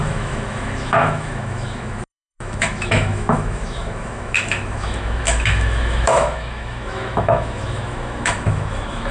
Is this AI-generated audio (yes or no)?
yes